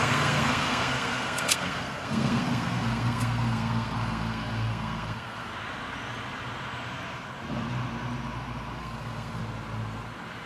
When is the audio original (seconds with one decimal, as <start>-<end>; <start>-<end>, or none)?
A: 5.5-8.8; 9.4-10.5